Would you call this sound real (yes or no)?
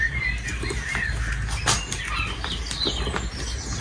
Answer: yes